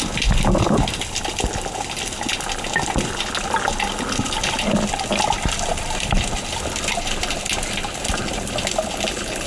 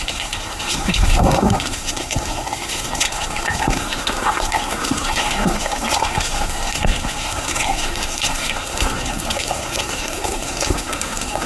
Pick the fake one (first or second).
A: second